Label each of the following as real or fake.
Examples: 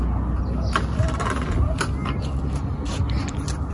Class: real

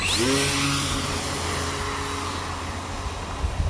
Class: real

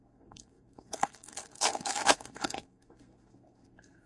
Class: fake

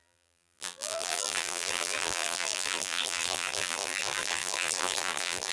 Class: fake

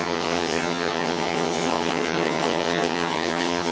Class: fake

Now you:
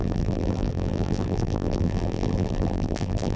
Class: fake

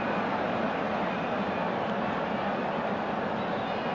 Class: real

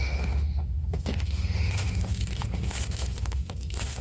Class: fake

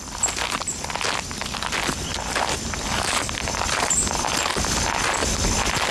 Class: real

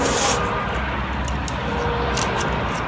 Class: real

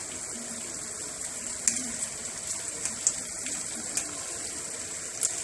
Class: real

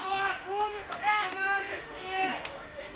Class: fake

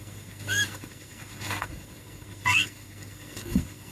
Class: fake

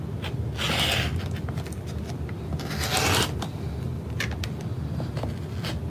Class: real